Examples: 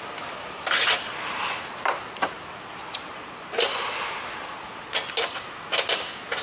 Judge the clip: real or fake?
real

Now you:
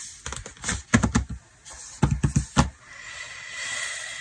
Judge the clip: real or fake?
real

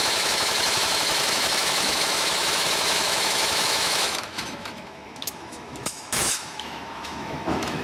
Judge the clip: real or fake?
fake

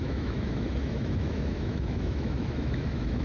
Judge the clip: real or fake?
fake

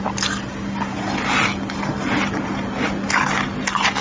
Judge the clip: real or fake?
real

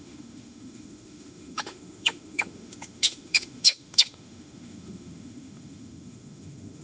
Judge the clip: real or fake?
fake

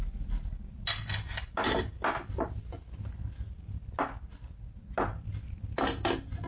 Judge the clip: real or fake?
real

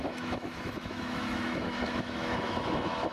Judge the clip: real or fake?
fake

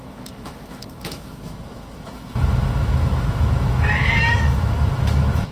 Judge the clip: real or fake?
fake